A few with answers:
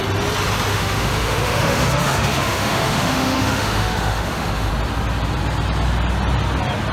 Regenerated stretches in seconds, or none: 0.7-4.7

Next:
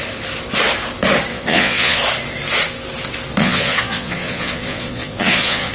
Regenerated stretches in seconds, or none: 1.3-2.0; 3.4-5.7

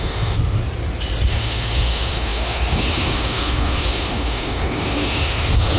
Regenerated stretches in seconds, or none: 0.0-0.6; 1.3-5.8